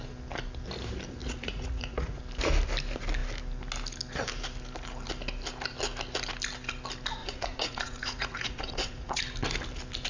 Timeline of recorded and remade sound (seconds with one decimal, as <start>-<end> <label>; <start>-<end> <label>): 0.0-1.2 recorded; 1.2-2.2 remade; 2.2-7.2 recorded; 7.2-9.2 remade; 9.2-10.1 recorded